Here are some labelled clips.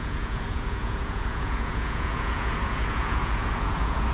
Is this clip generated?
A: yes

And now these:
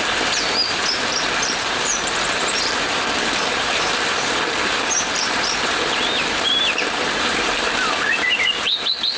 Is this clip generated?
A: yes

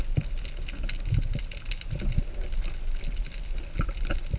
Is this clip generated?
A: no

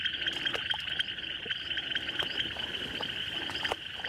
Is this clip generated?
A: no